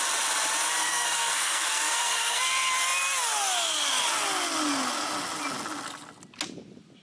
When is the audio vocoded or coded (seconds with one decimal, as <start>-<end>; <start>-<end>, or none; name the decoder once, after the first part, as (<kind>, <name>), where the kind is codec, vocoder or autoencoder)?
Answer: 0.8-2.4 (codec, SNAC)